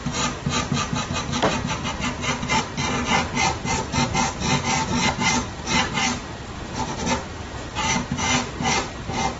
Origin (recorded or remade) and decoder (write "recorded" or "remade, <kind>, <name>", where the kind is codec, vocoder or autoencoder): recorded